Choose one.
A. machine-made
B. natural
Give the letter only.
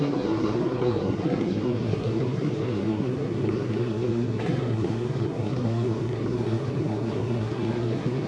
A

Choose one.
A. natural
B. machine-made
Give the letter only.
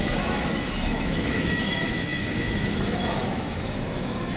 B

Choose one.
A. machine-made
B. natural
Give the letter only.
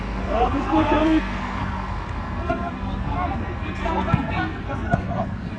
A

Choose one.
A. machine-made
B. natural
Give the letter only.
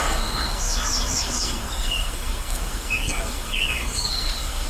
A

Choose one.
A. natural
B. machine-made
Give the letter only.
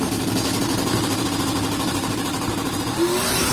B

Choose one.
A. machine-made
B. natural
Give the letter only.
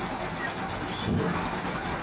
B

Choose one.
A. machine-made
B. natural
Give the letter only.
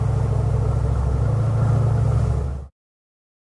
B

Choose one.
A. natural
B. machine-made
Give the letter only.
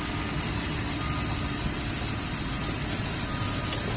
A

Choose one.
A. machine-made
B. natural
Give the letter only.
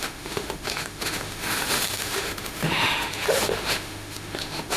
A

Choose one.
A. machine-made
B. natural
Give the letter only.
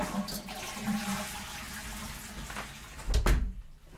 B